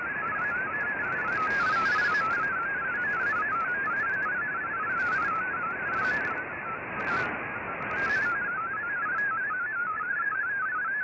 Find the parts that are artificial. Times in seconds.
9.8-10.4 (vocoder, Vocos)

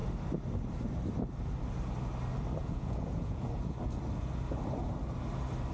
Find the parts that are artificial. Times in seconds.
2.6-3.4 (vocoder, Vocos)